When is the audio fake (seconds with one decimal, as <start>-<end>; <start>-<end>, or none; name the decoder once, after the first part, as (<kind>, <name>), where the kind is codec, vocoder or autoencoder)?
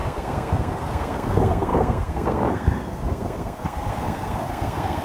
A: 0.0-5.0 (codec, SNAC)